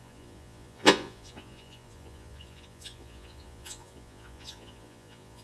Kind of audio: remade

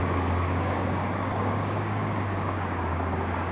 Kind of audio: remade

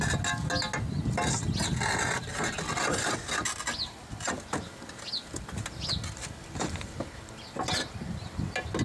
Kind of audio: recorded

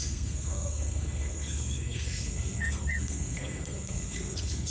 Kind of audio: remade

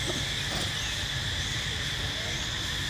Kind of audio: recorded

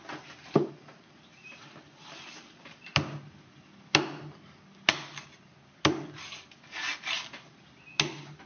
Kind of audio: recorded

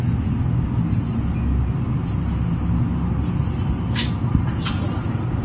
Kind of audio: recorded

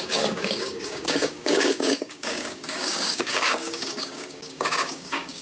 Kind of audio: remade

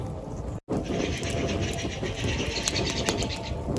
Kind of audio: recorded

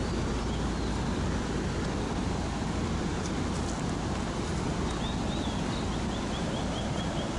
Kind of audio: recorded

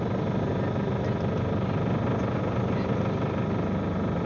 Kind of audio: recorded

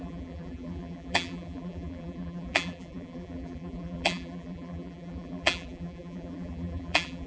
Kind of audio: remade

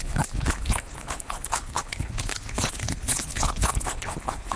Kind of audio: remade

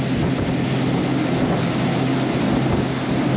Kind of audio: recorded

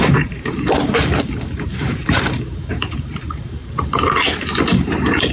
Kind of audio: remade